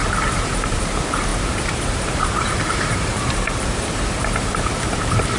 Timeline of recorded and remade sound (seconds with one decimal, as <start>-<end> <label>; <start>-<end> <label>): 0.0-5.4 remade